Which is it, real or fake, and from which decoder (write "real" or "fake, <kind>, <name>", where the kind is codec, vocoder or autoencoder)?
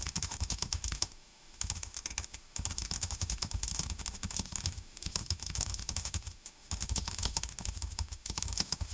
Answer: fake, autoencoder, DAC-VAE